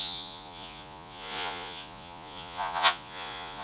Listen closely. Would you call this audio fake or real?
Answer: fake